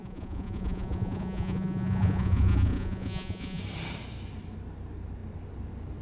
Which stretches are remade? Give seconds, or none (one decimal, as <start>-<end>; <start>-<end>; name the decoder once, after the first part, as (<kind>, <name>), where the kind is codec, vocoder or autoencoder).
0.0-3.6 (vocoder, Vocos)